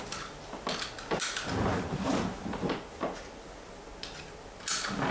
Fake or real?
real